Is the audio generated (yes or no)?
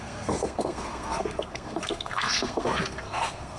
yes